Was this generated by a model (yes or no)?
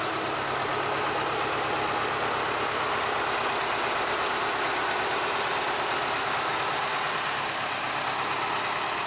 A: no